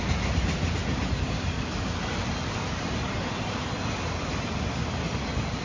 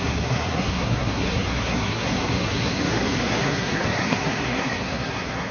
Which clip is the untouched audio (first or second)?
first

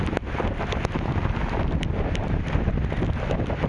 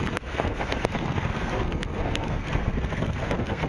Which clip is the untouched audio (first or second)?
first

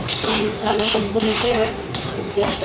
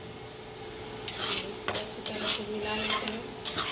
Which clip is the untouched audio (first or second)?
second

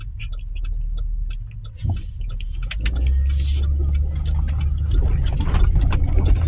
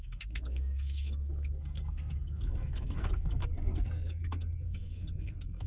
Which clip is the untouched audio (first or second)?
first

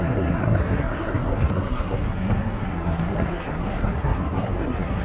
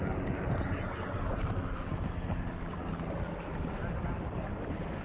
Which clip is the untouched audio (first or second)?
second